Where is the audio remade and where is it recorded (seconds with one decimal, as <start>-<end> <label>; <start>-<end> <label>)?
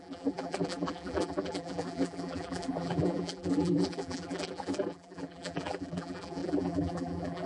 0.0-7.5 remade